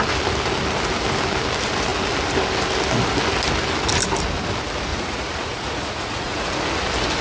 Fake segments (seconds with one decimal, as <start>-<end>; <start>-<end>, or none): 4.9-6.5